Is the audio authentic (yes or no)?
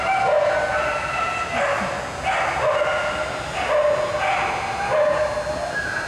yes